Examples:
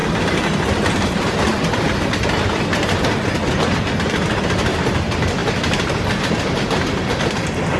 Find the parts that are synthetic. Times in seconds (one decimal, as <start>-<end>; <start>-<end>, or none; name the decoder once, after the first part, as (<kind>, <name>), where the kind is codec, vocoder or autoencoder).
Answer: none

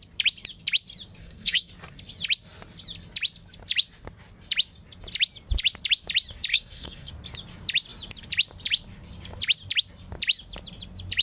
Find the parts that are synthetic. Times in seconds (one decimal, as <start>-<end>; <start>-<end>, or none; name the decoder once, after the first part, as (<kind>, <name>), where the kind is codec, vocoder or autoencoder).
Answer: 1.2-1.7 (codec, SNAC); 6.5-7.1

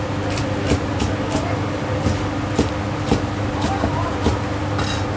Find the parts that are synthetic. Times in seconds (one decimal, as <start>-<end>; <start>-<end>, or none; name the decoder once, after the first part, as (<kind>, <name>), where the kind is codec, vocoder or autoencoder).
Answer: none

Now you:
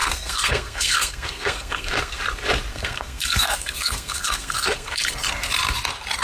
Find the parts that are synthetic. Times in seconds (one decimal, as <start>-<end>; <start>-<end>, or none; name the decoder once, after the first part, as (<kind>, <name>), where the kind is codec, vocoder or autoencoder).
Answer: 0.0-2.2 (codec, SNAC); 2.7-5.0

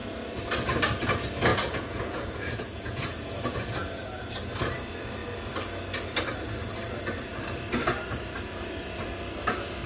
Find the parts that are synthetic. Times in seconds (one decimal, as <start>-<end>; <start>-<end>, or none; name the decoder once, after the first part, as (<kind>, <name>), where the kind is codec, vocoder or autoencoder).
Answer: 1.5-4.3 (vocoder, Vocos)

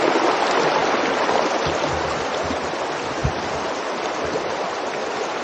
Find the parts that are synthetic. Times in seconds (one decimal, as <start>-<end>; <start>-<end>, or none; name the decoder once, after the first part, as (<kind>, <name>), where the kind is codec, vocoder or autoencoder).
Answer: 3.2-4.7 (vocoder, BigVGAN v2)

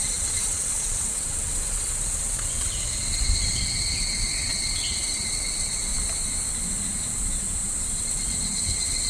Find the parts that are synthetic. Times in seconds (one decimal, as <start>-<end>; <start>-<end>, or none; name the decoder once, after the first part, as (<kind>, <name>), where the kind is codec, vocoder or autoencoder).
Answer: 0.0-5.9 (vocoder, WaveNeXt); 8.0-9.1

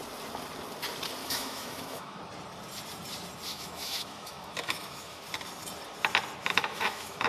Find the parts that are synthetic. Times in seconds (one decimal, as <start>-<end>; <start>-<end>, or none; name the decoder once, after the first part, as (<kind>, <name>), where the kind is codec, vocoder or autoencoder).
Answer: 1.2-2.2 (autoencoder, DAC-VAE); 3.5-5.2; 6.4-7.3